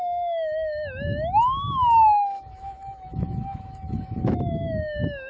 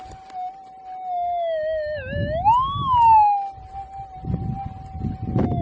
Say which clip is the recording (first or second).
second